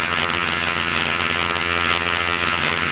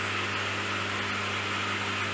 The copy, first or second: first